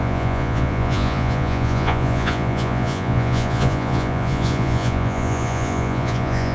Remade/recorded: remade